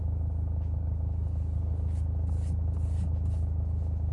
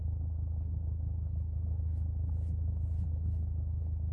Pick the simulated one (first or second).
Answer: second